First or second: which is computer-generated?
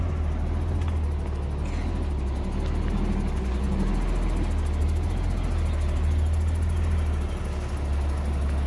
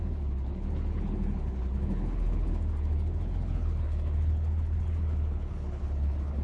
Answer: second